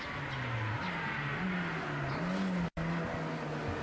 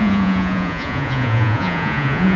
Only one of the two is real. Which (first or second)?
first